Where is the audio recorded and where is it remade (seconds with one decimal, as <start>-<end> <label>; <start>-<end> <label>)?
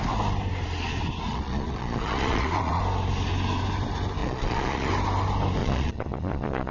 0.0-1.3 recorded; 1.3-2.8 remade; 2.8-4.2 recorded; 4.2-4.9 remade; 4.9-5.6 recorded; 5.6-6.7 remade